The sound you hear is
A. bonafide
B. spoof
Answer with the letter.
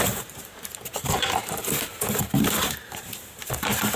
B